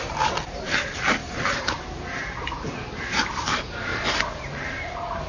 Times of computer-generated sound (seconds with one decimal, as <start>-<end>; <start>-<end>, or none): 0.0-3.9; 4.4-5.3